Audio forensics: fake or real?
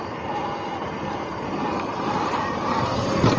real